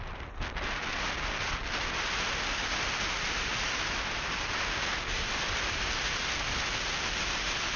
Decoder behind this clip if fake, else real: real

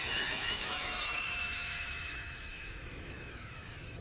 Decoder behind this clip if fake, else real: fake, autoencoder, DAC-VAE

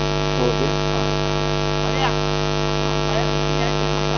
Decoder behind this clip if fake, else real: real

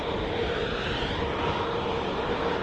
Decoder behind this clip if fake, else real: real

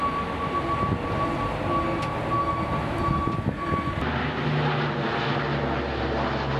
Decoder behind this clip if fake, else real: real